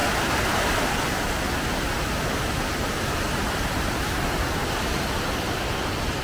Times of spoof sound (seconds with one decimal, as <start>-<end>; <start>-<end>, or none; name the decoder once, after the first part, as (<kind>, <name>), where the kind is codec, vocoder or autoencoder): none